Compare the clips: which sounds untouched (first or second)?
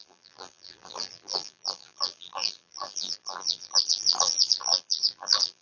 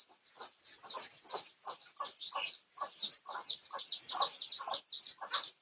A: second